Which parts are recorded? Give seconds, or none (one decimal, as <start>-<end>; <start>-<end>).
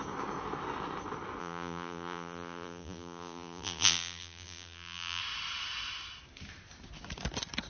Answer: 0.0-1.4; 5.2-7.7